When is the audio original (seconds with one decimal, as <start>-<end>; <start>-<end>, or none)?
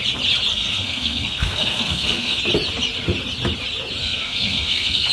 0.0-0.5; 2.4-4.0